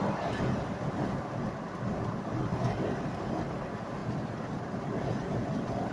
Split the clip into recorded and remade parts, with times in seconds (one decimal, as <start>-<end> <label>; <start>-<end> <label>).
0.0-5.9 recorded